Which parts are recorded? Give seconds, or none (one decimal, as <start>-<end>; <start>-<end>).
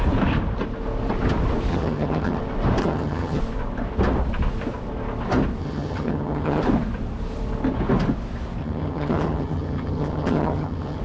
0.0-1.7; 2.4-2.8; 3.4-5.6; 6.6-8.6